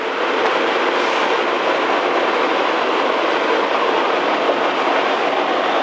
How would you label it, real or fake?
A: fake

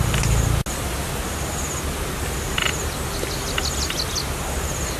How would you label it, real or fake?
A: real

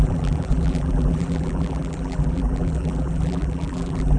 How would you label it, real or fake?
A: fake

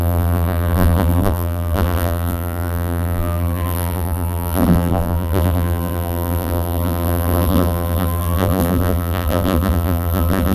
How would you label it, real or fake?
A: fake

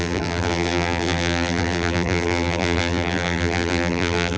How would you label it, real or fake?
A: fake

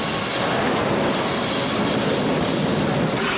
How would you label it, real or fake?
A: real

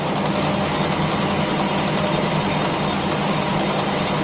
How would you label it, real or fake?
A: real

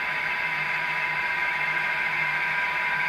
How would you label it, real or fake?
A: fake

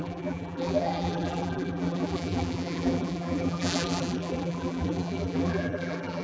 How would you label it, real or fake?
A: fake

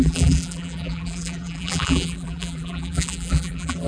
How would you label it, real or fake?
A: fake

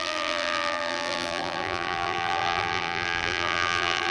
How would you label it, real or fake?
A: fake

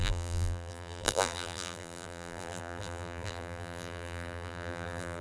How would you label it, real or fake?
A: fake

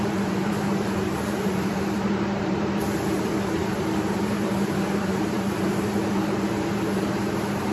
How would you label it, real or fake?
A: fake